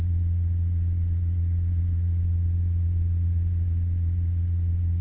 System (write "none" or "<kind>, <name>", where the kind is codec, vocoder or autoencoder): vocoder, Vocos